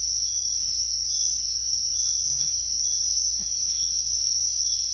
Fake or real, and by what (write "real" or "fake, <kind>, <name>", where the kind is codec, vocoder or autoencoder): fake, codec, SNAC